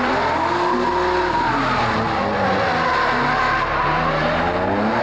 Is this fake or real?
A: real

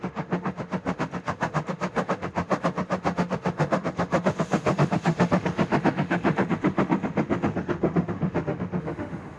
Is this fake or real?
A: fake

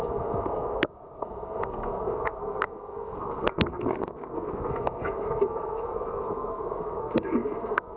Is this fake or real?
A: fake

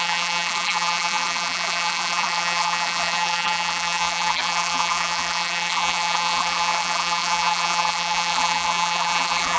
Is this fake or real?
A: fake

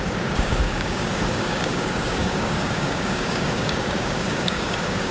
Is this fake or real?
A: fake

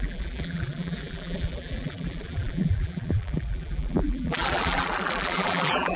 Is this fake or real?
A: fake